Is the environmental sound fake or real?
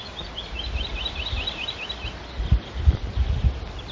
real